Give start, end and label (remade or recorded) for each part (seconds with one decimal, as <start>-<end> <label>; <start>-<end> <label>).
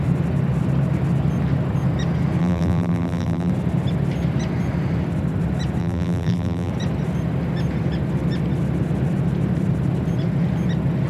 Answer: 0.0-2.4 recorded; 2.4-3.5 remade; 3.5-5.8 recorded; 5.8-6.7 remade; 6.7-11.1 recorded